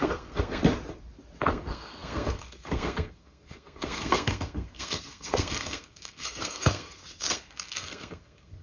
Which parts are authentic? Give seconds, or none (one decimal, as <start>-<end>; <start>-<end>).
0.6-1.5